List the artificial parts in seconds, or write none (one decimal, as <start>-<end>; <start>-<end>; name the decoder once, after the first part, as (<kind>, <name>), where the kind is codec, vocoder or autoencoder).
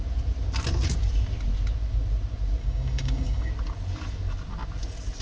2.6-3.5 (codec, DAC)